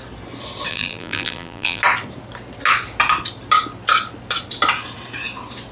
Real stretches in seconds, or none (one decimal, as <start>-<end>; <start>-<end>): 0.0-0.7; 1.8-5.7